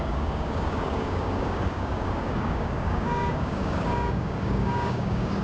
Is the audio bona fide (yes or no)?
no